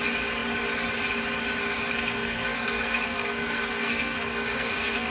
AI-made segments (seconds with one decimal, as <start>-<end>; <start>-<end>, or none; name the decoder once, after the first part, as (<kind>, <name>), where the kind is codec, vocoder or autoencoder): 1.9-5.1 (codec, SNAC)